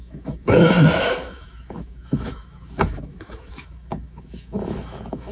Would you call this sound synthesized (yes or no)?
yes